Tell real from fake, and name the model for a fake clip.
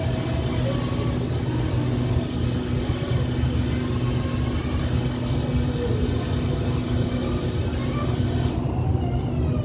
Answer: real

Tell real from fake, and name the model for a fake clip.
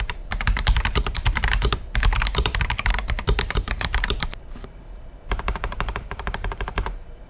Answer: fake, vocoder, BigVGAN v2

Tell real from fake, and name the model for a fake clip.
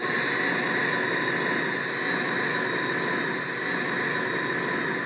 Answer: real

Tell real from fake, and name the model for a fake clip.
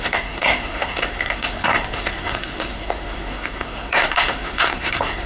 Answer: fake, codec, SNAC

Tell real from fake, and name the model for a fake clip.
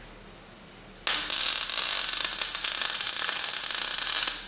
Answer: real